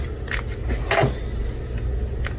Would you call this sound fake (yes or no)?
no